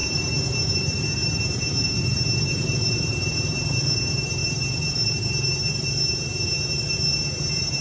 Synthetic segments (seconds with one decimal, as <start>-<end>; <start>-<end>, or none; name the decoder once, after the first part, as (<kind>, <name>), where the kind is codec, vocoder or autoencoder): none